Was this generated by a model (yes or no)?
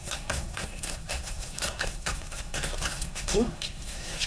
yes